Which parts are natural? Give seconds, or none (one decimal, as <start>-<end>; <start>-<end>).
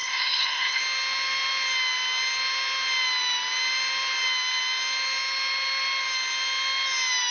0.8-7.3